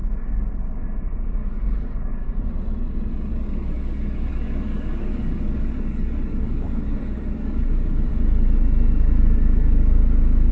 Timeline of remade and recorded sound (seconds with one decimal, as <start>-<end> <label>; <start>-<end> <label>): 0.0-0.5 remade; 0.5-1.4 recorded; 1.4-2.5 remade; 2.5-3.3 recorded; 3.3-8.1 remade; 8.1-10.5 recorded